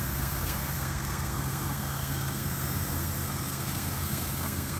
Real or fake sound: fake